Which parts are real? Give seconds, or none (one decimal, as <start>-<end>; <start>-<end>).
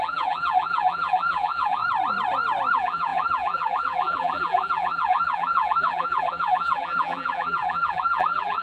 1.8-2.7